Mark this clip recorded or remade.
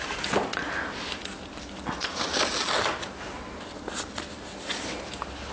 recorded